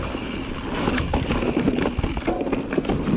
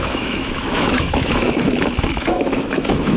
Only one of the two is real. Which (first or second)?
first